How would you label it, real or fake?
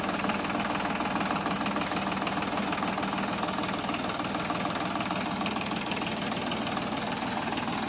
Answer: real